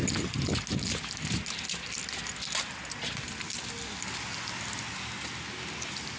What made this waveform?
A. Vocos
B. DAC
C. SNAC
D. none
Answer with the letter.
D